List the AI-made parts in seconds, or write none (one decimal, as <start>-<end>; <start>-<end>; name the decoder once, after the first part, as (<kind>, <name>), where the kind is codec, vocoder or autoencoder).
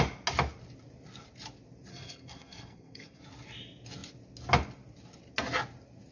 1.9-3.2 (codec, SNAC)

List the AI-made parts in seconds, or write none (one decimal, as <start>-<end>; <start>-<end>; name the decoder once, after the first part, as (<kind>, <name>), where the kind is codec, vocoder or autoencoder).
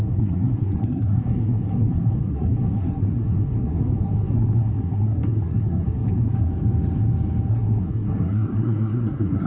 0.0-6.5 (codec, SNAC); 7.5-9.5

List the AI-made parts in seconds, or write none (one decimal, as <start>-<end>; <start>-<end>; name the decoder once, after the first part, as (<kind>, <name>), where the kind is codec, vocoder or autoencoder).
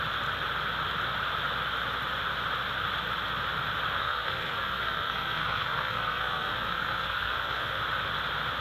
4.0-7.8 (codec, SNAC)